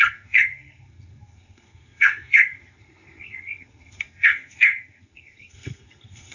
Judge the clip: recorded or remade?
remade